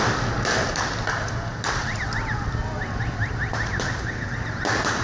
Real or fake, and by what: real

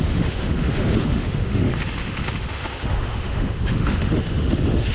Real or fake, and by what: fake, autoencoder, DAC-VAE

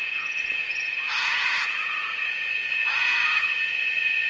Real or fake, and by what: fake, vocoder, Vocos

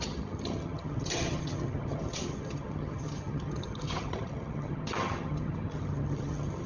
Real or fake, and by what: fake, vocoder, HiFi-GAN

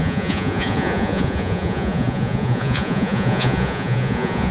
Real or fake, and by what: fake, vocoder, Vocos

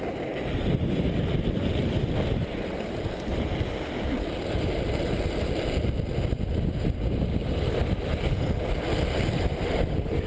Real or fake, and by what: real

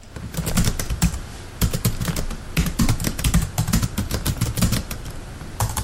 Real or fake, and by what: fake, vocoder, BigVGAN v2